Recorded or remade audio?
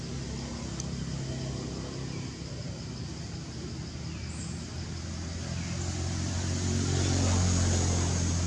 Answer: recorded